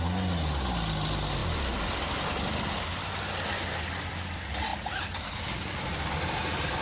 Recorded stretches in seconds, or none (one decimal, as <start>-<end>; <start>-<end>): 0.0-6.8